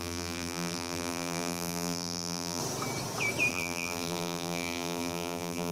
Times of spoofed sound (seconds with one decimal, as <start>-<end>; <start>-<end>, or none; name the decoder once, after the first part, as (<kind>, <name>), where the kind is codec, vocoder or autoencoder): 0.0-2.6 (vocoder, BigVGAN v2); 3.5-5.7